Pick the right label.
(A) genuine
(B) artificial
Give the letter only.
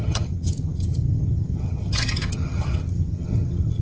B